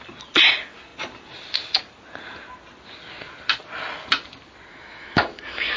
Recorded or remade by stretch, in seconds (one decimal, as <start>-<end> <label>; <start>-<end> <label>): 0.0-4.7 recorded; 4.7-5.8 remade